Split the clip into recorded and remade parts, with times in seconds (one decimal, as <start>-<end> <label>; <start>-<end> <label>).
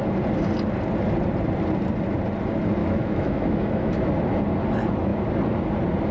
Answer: 0.0-2.8 recorded; 2.8-4.0 remade; 4.0-6.1 recorded